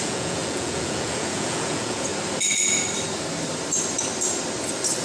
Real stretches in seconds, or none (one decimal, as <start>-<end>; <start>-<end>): 2.1-5.0